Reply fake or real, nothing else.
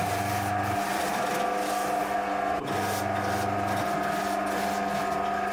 real